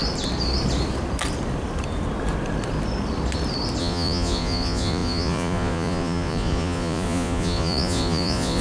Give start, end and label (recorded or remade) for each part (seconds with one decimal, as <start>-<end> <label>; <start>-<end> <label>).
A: 0.0-3.8 recorded; 3.8-8.6 remade

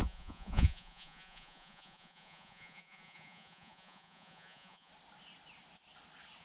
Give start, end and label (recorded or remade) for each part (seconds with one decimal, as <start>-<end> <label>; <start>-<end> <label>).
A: 0.0-4.9 remade; 4.9-6.4 recorded